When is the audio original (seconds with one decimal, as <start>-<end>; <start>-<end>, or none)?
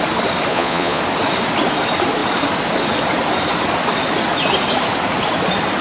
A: 0.0-0.5; 1.0-5.8